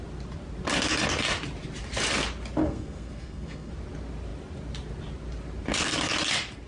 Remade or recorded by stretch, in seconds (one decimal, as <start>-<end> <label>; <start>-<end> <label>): 0.0-2.6 recorded; 2.6-3.7 remade; 3.7-6.7 recorded